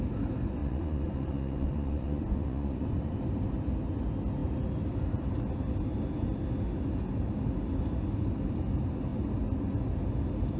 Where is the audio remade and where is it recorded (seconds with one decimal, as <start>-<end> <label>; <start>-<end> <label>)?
0.0-0.6 recorded; 0.6-3.2 remade; 3.2-10.6 recorded